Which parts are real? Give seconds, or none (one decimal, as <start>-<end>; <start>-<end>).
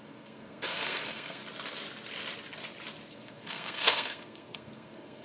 1.4-3.1